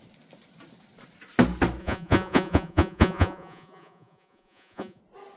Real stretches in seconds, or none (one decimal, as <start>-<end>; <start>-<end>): 0.0-1.8; 5.0-5.4